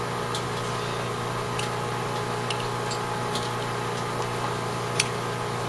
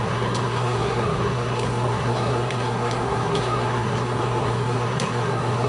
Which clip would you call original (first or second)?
first